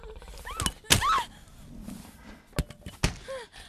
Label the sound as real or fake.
real